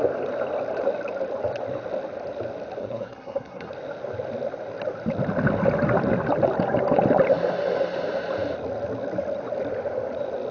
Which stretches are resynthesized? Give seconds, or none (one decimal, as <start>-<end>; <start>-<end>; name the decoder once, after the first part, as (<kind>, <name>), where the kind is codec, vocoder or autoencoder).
2.8-3.7 (codec, SNAC)